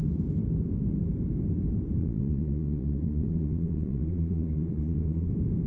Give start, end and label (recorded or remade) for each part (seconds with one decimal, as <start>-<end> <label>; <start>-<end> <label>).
0.0-2.0 recorded; 2.0-5.3 remade; 5.3-5.7 recorded